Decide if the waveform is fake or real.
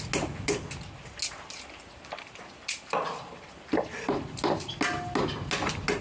real